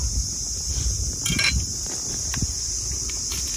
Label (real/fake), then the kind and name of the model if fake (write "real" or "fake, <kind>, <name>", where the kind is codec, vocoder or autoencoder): real